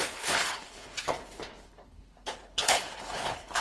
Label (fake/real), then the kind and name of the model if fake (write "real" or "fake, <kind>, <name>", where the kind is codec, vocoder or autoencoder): fake, codec, HILCodec